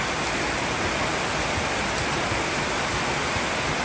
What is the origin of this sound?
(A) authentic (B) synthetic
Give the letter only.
A